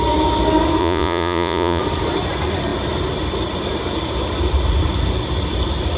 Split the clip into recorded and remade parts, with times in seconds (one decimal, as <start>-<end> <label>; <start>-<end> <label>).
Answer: 0.0-0.8 recorded; 0.8-1.8 remade; 1.8-6.0 recorded